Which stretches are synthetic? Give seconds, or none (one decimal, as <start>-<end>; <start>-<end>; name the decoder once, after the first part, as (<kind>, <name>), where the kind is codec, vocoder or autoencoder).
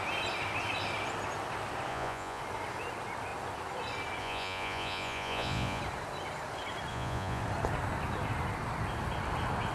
1.9-2.4 (vocoder, Vocos); 4.2-5.8; 6.9-7.4